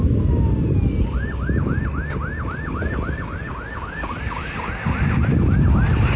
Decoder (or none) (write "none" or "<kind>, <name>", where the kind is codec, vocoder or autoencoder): none